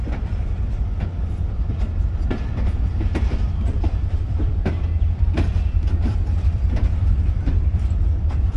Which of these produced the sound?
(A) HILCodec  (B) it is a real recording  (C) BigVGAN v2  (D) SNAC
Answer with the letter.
C